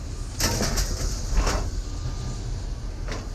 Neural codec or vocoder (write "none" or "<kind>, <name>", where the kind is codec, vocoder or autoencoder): none